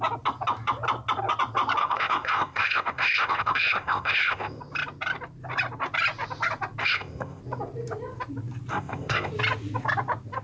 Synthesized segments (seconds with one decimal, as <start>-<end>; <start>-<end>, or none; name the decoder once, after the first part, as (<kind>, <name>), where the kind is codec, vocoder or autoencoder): 1.8-4.6 (codec, ZipCodec); 6.8-7.4; 8.7-9.3